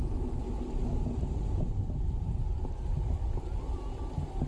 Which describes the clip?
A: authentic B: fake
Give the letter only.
A